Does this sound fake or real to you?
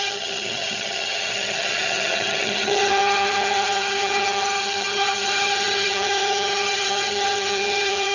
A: fake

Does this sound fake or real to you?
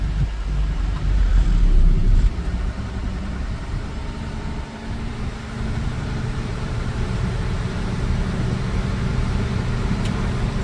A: fake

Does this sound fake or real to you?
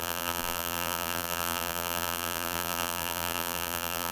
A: fake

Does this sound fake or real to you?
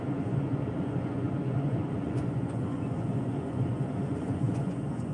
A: fake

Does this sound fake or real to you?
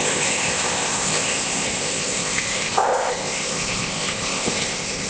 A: fake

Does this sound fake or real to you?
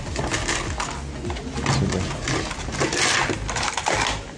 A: real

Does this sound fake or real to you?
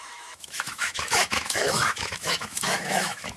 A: fake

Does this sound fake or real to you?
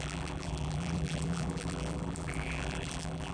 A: fake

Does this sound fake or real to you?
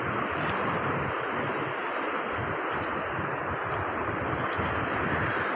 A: real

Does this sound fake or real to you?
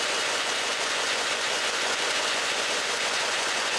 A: fake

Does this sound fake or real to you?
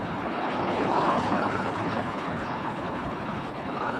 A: fake